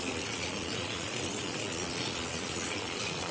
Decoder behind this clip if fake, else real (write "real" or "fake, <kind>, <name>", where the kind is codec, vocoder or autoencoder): fake, vocoder, Vocos